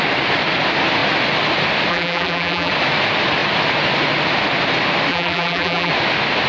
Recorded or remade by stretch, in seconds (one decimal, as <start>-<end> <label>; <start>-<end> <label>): 0.0-1.9 recorded; 1.9-2.7 remade; 2.7-5.1 recorded; 5.1-5.9 remade; 5.9-6.5 recorded